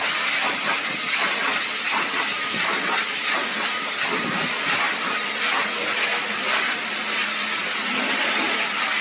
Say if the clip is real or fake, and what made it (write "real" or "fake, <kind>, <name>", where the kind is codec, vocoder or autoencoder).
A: fake, vocoder, BigVGAN v2